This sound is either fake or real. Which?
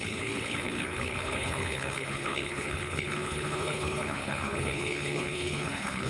fake